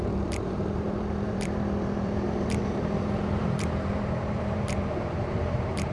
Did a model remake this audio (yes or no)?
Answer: yes